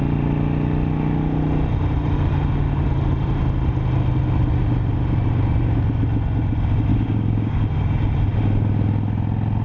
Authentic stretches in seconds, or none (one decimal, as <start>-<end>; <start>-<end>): 0.0-6.9; 7.6-9.6